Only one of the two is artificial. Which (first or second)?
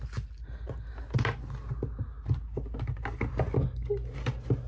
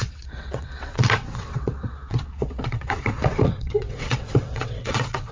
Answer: second